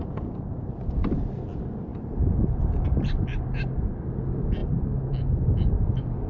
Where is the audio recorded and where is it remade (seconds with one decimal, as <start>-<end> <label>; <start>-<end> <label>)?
0.0-1.9 recorded; 1.9-3.4 remade; 3.4-4.6 recorded; 4.6-6.3 remade

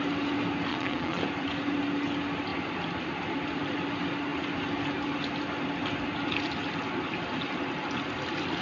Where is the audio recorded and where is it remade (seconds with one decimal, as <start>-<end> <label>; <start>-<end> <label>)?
0.0-0.7 recorded; 0.7-1.2 remade; 1.2-8.6 recorded

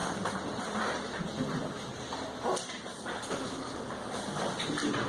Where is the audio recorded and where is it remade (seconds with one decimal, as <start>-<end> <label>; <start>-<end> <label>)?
0.0-5.1 recorded

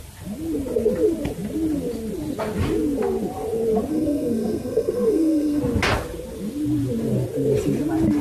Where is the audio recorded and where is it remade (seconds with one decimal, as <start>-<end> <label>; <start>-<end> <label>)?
0.0-3.9 recorded; 3.9-5.6 remade; 5.6-8.2 recorded

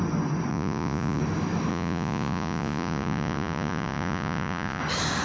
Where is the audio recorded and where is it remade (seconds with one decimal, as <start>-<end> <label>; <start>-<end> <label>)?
0.0-0.5 recorded; 0.5-1.2 remade; 1.2-1.7 recorded; 1.7-4.8 remade; 4.8-5.2 recorded

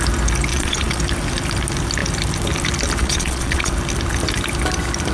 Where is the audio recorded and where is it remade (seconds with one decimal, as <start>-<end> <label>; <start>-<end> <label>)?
0.0-0.5 recorded; 0.5-1.0 remade; 1.0-3.0 recorded; 3.0-3.7 remade; 3.7-5.1 recorded

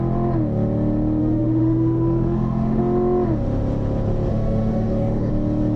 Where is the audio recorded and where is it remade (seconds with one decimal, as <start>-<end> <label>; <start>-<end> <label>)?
0.0-1.2 recorded; 1.2-2.8 remade; 2.8-4.3 recorded; 4.3-5.3 remade; 5.3-5.8 recorded